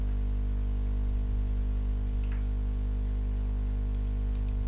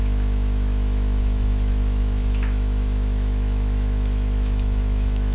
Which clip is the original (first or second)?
first